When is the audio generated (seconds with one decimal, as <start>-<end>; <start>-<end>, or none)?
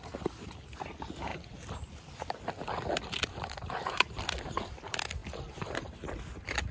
none